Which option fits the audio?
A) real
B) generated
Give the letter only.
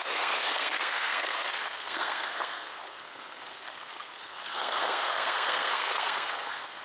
B